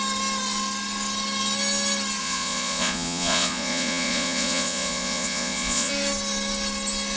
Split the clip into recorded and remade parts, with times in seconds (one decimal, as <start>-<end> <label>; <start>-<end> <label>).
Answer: 0.0-2.2 recorded; 2.2-5.9 remade; 5.9-7.2 recorded